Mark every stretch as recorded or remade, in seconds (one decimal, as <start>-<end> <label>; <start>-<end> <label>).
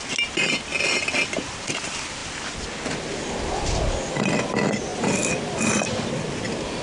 0.0-6.8 recorded